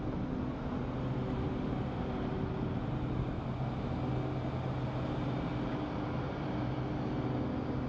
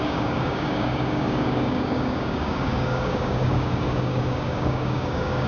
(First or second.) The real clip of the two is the first